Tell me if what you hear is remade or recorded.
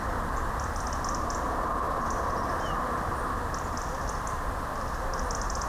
recorded